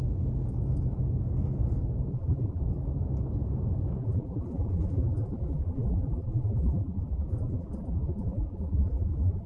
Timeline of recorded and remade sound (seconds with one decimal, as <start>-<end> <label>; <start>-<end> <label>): 0.0-2.1 recorded; 2.1-2.6 remade; 2.6-4.0 recorded; 4.0-9.5 remade